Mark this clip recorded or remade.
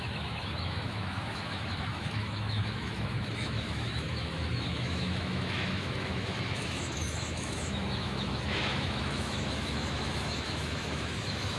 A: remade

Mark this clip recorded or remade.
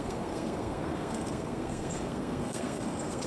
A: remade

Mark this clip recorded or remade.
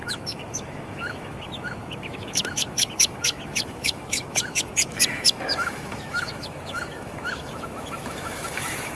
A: remade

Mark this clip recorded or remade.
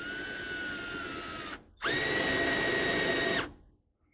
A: recorded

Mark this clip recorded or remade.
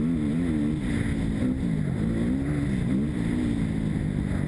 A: recorded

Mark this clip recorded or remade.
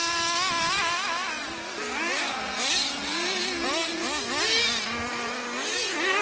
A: recorded